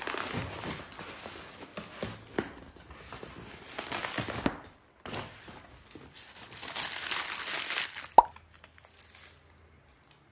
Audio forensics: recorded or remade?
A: recorded